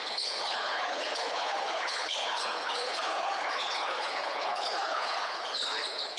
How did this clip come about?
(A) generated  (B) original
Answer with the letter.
A